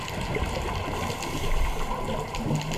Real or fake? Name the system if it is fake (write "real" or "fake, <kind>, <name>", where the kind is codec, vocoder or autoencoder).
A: real